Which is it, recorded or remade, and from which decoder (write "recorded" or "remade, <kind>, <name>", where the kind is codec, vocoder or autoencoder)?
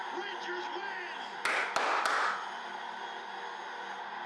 recorded